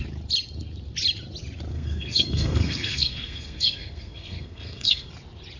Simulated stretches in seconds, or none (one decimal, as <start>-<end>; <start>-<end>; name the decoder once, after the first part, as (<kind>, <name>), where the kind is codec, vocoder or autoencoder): 1.7-5.1 (codec, SNAC)

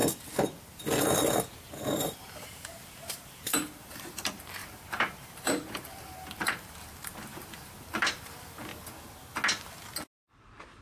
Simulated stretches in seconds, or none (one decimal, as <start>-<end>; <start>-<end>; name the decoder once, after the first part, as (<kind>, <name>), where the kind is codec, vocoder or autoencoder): 1.6-8.7 (vocoder, BigVGAN v2)

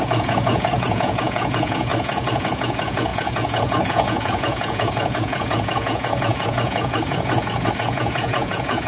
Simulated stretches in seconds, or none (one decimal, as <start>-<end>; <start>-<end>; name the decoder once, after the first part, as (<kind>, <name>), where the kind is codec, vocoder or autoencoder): 0.0-8.9 (vocoder, Vocos)

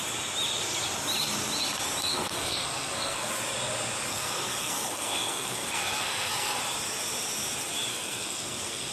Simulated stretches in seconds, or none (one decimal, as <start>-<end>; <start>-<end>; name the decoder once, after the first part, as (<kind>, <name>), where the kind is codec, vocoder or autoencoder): 2.1-3.3 (codec, SNAC); 4.1-6.6; 7.9-8.9

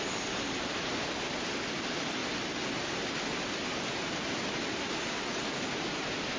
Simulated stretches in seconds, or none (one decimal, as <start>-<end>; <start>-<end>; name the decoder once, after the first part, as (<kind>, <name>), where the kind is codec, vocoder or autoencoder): none